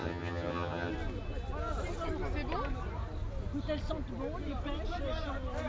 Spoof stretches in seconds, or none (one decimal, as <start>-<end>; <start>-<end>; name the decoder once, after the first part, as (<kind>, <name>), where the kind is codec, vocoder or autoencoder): 0.0-0.9 (vocoder, HiFi-GAN)